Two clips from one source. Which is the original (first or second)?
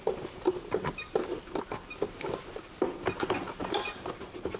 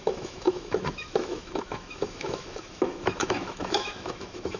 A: first